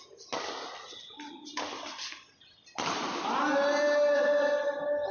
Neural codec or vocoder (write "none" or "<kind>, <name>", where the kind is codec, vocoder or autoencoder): none